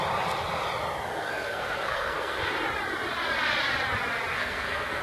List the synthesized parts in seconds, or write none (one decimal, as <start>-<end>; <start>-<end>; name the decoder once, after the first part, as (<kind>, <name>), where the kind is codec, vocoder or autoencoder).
1.1-2.4 (codec, SNAC); 4.3-5.0